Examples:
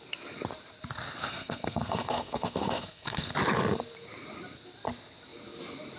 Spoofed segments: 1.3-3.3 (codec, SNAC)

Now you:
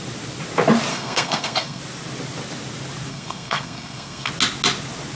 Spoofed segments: 0.9-1.8 (codec, SNAC); 3.1-4.3

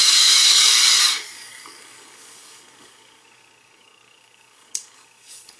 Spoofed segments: 0.0-5.6 (codec, DAC)

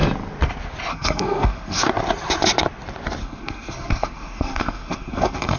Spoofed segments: 0.9-1.8 (codec, SNAC); 3.2-5.6